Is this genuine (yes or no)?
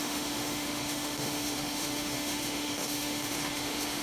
no